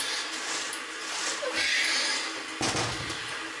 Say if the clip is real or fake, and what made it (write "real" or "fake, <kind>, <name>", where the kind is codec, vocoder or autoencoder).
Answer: real